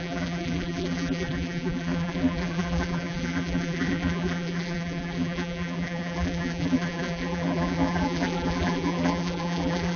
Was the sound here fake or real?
fake